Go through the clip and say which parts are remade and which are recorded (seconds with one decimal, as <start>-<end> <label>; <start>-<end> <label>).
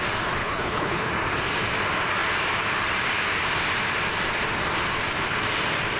0.0-0.4 recorded; 0.4-1.1 remade; 1.1-6.0 recorded